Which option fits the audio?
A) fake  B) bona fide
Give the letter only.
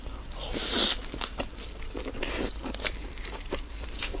A